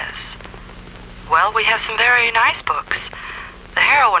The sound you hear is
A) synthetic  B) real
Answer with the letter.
B